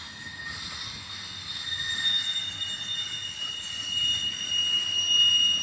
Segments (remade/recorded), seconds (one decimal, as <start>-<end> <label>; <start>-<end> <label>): 0.0-5.6 recorded